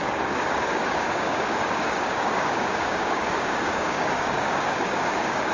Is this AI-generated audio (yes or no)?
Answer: yes